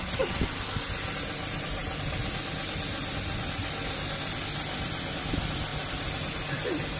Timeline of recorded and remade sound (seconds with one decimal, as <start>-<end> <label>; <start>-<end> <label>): 0.0-7.0 recorded